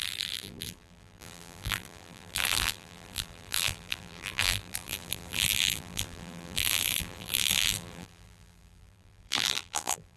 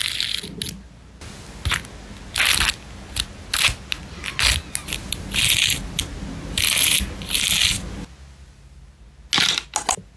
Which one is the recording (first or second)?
second